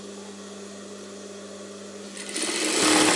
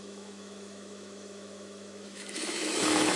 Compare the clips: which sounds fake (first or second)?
second